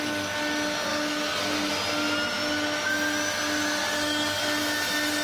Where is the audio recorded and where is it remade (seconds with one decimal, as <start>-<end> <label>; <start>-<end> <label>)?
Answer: 0.0-0.9 recorded; 0.9-1.7 remade; 1.7-3.8 recorded; 3.8-4.4 remade; 4.4-5.2 recorded